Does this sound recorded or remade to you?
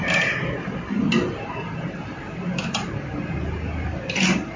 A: recorded